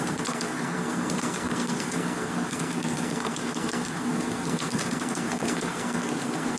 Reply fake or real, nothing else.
fake